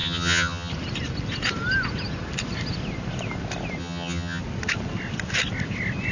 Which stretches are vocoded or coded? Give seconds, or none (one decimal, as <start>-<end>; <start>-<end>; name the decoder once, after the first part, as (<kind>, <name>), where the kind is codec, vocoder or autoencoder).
0.0-0.7 (vocoder, HiFi-GAN); 3.8-4.4